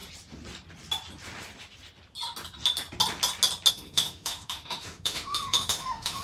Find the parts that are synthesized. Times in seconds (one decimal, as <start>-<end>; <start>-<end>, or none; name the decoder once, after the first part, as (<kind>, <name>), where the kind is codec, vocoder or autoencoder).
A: 3.7-6.2 (autoencoder, DAC-VAE)